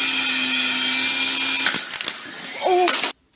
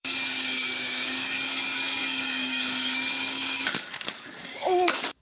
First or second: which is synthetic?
second